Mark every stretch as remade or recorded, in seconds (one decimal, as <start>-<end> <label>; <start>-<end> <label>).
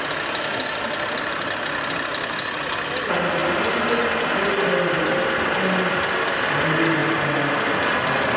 0.0-8.4 recorded